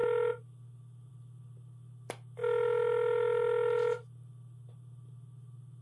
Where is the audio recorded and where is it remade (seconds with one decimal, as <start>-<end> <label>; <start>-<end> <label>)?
0.0-5.8 recorded